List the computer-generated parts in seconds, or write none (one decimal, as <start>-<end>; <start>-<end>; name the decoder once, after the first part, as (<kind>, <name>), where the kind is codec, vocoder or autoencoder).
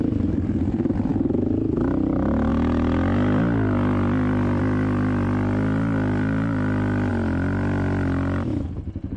none